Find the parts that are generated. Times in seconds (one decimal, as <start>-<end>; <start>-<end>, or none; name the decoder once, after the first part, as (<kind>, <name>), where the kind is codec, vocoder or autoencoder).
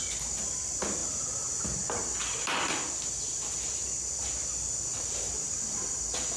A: none